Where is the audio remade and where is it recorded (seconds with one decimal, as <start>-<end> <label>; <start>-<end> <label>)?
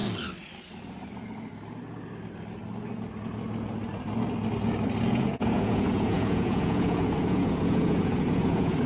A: 0.0-5.0 recorded; 5.0-8.9 remade